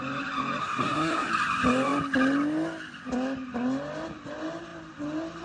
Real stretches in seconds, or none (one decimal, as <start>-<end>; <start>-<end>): 0.0-0.6; 1.3-5.4